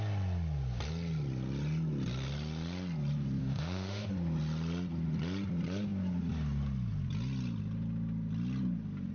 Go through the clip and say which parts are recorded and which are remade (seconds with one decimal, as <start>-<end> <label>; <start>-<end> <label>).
0.0-3.4 recorded; 3.4-4.1 remade; 4.1-9.1 recorded